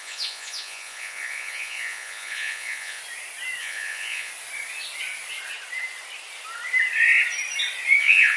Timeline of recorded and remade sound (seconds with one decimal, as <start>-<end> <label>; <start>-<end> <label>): 0.0-3.0 remade; 3.0-3.6 recorded; 3.6-4.3 remade; 4.3-8.0 recorded; 8.0-8.4 remade